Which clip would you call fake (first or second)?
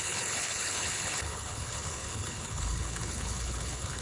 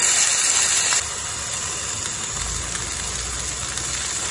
first